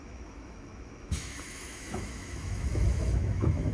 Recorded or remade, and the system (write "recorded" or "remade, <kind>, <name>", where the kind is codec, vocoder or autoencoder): remade, autoencoder, DAC-VAE